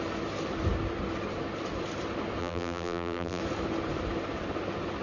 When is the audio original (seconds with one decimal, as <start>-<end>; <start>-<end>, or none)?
0.0-2.4; 3.4-5.0